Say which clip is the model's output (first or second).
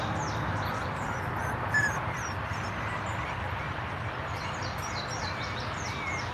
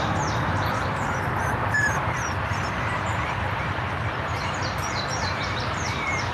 second